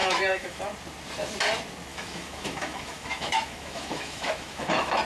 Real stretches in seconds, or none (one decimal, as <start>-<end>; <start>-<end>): 0.6-1.9